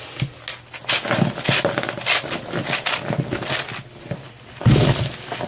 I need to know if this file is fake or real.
real